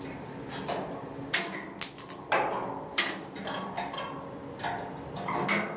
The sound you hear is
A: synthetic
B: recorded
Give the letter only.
B